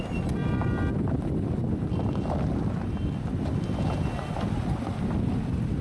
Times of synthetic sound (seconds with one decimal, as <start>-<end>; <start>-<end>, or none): none